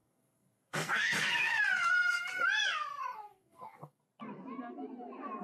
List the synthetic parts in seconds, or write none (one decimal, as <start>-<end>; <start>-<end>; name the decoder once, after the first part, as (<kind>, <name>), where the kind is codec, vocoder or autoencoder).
0.0-1.6 (codec, SNAC); 2.9-4.0